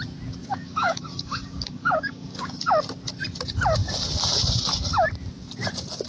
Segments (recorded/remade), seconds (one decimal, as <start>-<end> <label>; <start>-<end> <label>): 0.0-0.4 recorded; 0.4-2.7 remade; 2.7-6.1 recorded